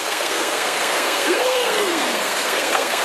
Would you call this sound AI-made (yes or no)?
yes